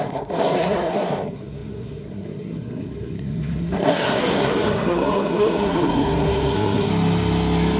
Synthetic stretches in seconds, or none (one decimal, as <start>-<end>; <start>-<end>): 0.0-6.9